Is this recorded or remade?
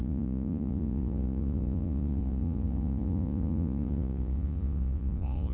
remade